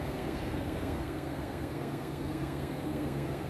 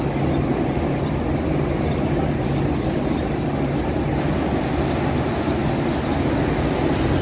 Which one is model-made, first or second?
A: first